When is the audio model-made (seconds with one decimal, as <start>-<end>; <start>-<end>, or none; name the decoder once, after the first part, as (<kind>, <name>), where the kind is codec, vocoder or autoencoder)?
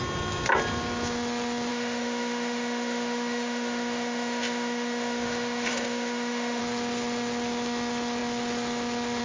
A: 1.7-6.6 (autoencoder, DAC-VAE)